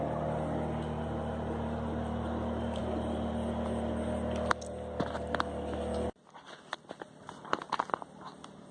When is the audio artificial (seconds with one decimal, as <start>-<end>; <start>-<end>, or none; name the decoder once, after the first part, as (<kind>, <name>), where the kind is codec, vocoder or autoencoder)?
none